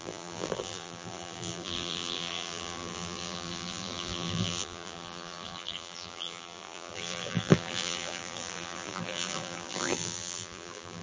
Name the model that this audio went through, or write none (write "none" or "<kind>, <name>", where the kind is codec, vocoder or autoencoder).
vocoder, BigVGAN v2